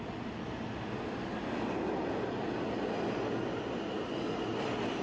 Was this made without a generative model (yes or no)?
yes